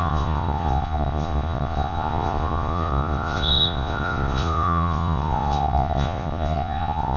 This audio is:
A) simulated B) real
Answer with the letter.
A